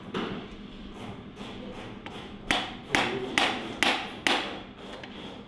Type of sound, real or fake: real